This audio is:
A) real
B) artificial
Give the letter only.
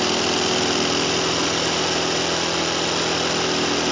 A